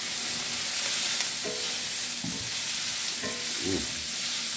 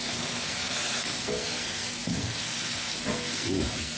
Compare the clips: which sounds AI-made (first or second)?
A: second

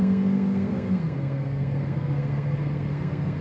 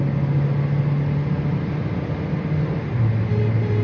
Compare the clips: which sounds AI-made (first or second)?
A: first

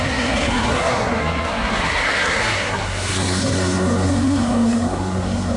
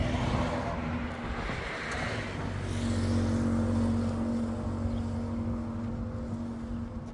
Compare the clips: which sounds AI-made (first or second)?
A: first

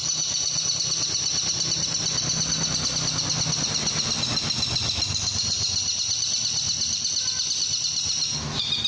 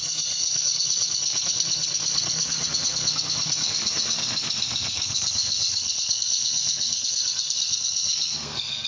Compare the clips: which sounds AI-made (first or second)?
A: second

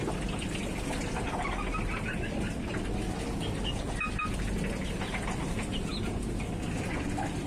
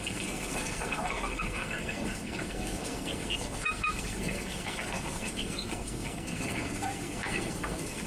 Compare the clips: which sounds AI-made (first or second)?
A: second